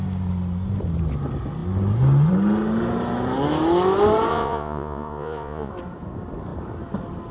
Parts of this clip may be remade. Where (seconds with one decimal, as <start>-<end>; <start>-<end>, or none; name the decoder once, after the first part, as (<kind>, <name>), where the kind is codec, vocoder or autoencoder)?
4.3-5.7 (vocoder, Vocos)